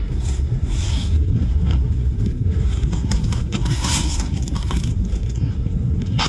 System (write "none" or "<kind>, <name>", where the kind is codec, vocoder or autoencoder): codec, SNAC